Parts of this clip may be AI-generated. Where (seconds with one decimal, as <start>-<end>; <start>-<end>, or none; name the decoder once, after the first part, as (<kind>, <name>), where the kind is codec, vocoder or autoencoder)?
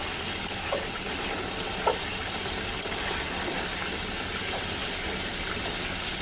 0.0-0.5 (vocoder, BigVGAN v2); 2.1-4.0